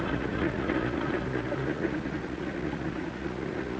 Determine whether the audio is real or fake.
fake